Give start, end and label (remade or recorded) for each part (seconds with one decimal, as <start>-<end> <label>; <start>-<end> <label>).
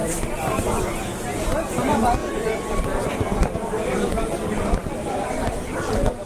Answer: 0.0-5.0 recorded; 5.0-5.6 remade; 5.6-6.3 recorded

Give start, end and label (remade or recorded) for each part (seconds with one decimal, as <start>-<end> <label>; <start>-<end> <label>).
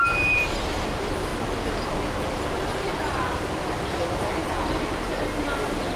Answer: 0.0-1.3 remade; 1.3-2.3 recorded; 2.3-2.9 remade; 2.9-4.0 recorded; 4.0-6.0 remade